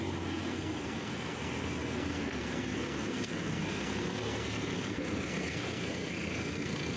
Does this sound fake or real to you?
fake